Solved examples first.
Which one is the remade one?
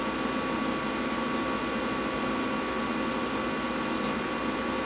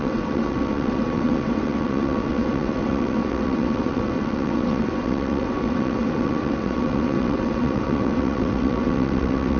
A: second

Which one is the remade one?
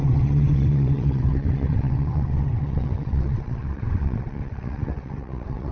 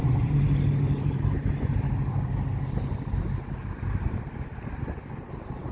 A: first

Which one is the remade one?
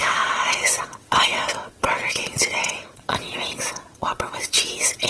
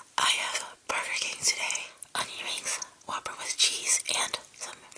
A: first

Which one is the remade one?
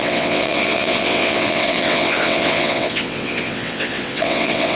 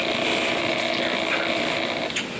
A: first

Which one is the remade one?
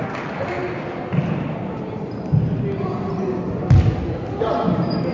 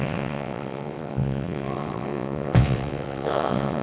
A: second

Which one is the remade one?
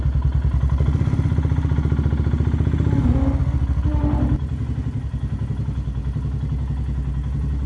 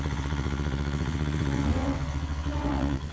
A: second